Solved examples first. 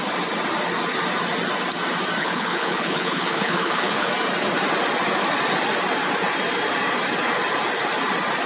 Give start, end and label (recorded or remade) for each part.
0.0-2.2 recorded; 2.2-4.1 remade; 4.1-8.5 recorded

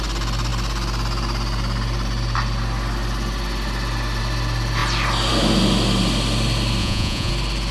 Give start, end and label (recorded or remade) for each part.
0.0-6.8 recorded; 6.8-7.3 remade; 7.3-7.7 recorded

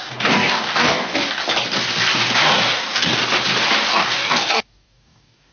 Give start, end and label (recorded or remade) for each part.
0.0-1.4 remade; 1.4-2.7 recorded; 2.7-3.2 remade; 3.2-3.9 recorded; 3.9-5.5 remade

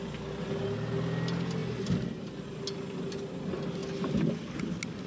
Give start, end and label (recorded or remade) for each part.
0.0-5.1 recorded